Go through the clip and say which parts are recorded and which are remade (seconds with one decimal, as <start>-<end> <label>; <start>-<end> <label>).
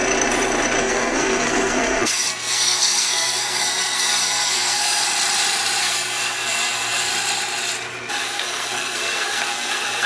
0.0-0.8 recorded; 0.8-5.0 remade; 5.0-5.8 recorded; 5.8-7.1 remade; 7.1-8.2 recorded; 8.2-10.1 remade